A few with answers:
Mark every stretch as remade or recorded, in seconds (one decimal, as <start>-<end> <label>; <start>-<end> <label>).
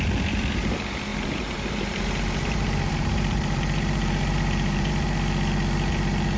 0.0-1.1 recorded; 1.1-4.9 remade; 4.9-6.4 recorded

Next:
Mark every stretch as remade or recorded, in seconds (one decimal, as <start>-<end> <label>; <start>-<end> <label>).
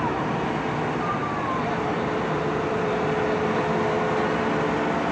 0.0-1.2 recorded; 1.2-3.2 remade; 3.2-5.1 recorded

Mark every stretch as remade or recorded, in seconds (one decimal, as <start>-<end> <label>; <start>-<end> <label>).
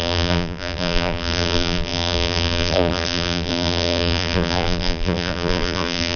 0.0-6.2 remade